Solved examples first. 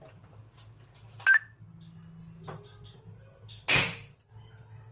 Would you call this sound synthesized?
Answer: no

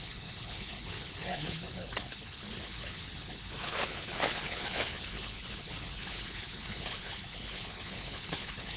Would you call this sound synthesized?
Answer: yes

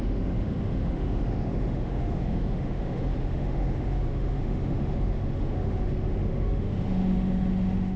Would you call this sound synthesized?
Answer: yes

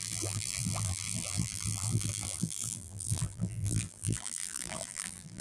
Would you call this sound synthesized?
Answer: yes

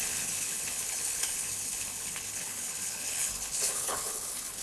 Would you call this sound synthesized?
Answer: yes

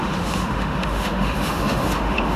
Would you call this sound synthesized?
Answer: yes